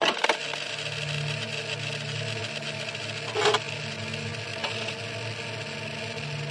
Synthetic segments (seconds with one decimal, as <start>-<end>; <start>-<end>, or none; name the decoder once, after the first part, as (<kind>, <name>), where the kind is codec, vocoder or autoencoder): none